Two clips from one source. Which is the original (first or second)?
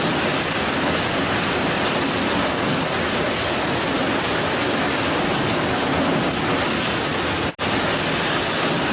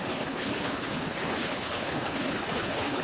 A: first